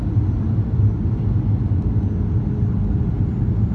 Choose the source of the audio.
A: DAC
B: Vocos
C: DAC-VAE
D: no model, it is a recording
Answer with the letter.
D